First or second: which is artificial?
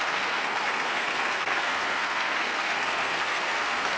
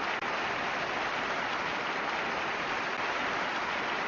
first